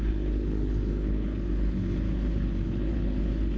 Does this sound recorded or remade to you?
remade